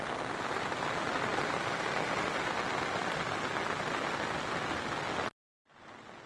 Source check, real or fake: real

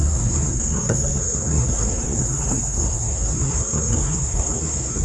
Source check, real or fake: fake